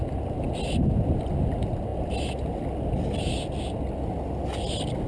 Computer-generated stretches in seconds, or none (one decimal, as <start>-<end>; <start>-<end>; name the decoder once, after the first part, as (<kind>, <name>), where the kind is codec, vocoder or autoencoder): none